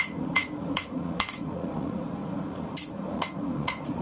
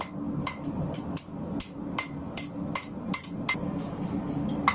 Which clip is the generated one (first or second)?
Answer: first